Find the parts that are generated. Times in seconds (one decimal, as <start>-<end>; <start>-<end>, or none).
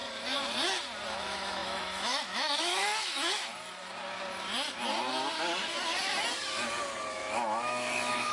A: 1.2-3.4; 7.1-8.3